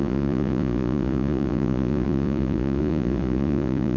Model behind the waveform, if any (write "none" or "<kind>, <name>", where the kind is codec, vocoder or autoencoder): vocoder, Vocos